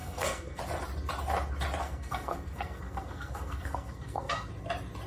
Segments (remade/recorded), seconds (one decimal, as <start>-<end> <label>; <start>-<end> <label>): 0.0-0.6 remade; 0.6-1.8 recorded; 1.8-4.5 remade; 4.5-5.1 recorded